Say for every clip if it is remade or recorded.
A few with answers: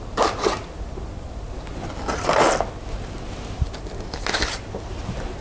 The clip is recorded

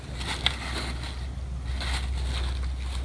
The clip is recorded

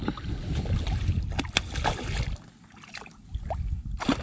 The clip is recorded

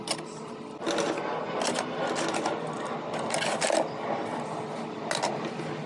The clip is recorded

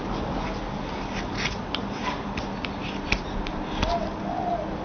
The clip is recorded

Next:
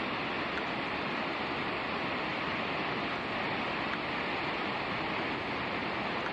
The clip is recorded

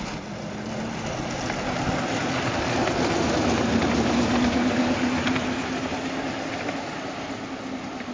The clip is recorded